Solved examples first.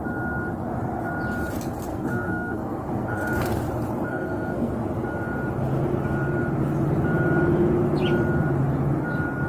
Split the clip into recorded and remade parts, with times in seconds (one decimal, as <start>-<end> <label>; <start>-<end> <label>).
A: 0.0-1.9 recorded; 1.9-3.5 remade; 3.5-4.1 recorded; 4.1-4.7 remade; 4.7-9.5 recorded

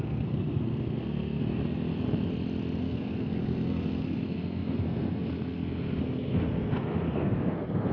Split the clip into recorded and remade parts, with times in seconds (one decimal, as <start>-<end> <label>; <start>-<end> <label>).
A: 0.0-1.6 remade; 1.6-2.8 recorded; 2.8-7.9 remade

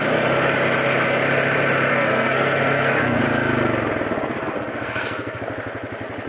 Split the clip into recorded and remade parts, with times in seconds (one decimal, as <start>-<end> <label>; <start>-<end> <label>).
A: 0.0-1.9 recorded; 1.9-3.2 remade; 3.2-4.3 recorded; 4.3-5.4 remade; 5.4-6.3 recorded

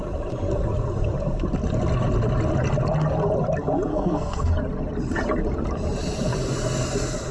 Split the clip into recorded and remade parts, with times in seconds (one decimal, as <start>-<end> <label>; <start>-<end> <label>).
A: 0.0-3.9 recorded; 3.9-4.5 remade; 4.5-7.3 recorded